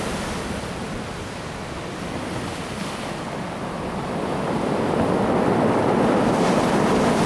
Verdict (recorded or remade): recorded